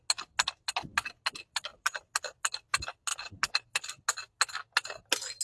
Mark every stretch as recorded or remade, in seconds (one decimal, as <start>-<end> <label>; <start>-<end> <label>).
0.0-5.4 recorded